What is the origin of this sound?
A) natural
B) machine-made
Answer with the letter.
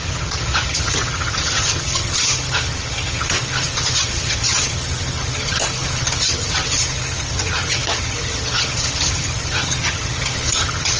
B